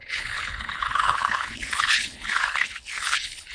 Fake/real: fake